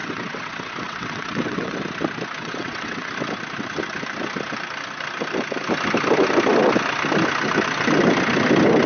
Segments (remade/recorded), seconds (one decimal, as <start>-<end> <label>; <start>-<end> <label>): 0.0-1.8 remade; 1.8-2.4 recorded; 2.4-3.1 remade; 3.1-8.9 recorded